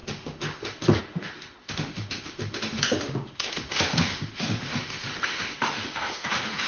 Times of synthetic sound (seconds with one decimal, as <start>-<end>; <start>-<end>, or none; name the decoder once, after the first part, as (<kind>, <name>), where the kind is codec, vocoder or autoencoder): 0.0-6.7 (autoencoder, DAC-VAE)

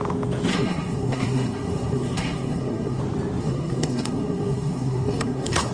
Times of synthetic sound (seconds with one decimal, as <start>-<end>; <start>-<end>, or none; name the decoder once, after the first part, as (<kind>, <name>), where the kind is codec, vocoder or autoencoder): 0.5-3.0 (codec, SNAC); 3.4-5.7